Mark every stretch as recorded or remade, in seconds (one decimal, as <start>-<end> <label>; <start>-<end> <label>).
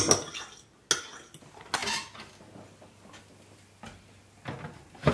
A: 0.0-5.1 recorded